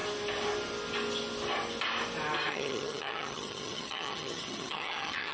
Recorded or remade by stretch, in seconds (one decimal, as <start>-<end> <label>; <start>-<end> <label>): 0.0-2.5 recorded; 2.5-5.3 remade